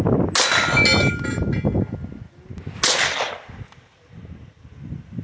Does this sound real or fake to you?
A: real